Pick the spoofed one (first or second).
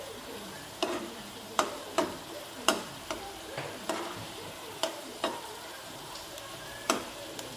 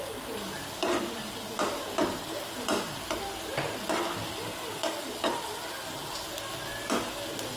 first